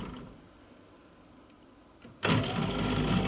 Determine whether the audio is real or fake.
real